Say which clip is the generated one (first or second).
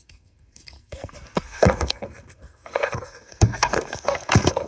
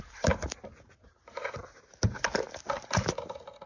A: first